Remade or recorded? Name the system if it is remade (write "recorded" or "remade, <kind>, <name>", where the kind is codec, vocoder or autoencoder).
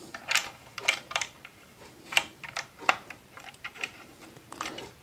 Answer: remade, vocoder, BigVGAN v2